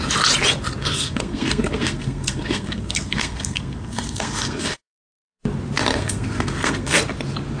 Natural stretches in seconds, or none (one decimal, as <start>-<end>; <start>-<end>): 0.0-0.8; 5.4-5.9; 7.0-7.6